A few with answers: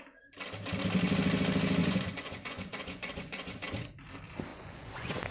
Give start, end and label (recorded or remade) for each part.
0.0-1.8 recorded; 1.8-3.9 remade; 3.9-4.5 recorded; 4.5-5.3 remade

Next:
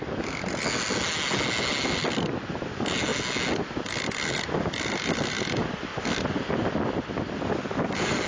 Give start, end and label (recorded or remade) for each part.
0.0-8.3 recorded

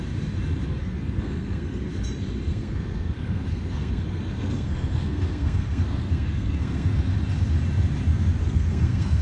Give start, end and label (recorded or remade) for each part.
0.0-0.8 recorded; 0.8-1.8 remade; 1.8-2.5 recorded; 2.5-7.0 remade; 7.0-8.4 recorded; 8.4-9.2 remade

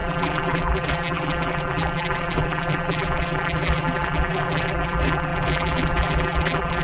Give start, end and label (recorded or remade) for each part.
0.0-6.8 remade

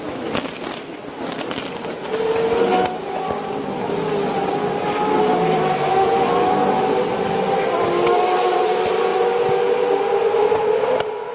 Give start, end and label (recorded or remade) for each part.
0.0-11.3 recorded

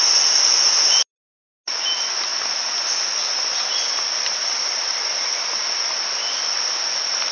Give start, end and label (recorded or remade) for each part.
0.0-7.3 recorded